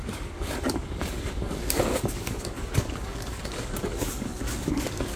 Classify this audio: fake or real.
fake